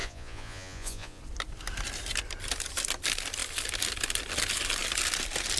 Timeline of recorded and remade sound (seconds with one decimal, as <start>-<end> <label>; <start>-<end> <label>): 0.0-1.2 remade; 1.2-5.6 recorded